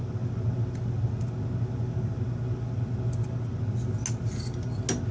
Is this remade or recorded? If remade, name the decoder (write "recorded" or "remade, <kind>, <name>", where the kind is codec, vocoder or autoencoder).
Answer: recorded